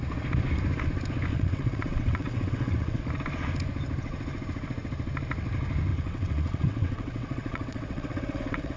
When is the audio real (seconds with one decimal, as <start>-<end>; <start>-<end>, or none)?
0.0-1.3; 3.0-5.9